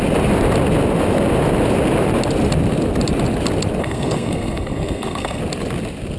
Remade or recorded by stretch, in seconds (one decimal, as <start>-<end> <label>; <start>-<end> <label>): 0.0-3.8 recorded; 3.8-5.4 remade; 5.4-6.2 recorded